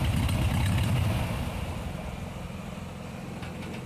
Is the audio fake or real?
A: real